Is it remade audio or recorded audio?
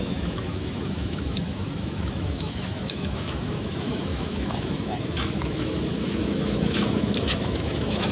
remade